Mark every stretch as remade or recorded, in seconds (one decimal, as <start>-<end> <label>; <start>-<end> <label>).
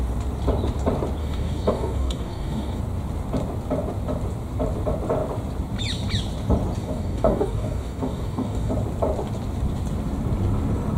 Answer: 0.0-1.2 recorded; 1.2-2.8 remade; 2.8-6.8 recorded; 6.8-8.7 remade; 8.7-11.0 recorded